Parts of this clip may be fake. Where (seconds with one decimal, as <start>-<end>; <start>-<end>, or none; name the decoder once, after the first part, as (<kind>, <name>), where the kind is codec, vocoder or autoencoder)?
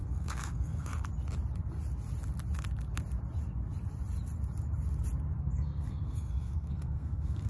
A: 0.0-0.9 (codec, SNAC); 5.4-7.5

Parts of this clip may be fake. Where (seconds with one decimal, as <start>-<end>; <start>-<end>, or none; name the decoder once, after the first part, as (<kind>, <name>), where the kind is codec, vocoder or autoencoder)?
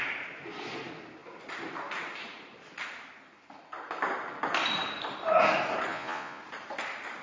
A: 5.9-6.4 (vocoder, Vocos)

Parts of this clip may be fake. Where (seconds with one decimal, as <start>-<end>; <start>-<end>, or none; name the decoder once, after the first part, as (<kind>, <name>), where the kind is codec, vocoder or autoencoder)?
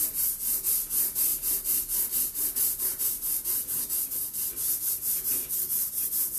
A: none